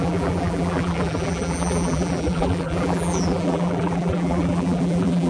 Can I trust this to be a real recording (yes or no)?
no